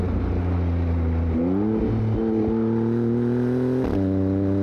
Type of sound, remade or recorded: recorded